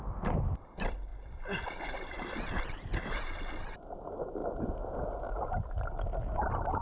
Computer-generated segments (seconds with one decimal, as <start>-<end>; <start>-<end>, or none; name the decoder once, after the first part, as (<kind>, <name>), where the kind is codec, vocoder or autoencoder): none